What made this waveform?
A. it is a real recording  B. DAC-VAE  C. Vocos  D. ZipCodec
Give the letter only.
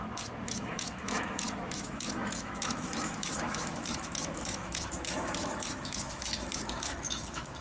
B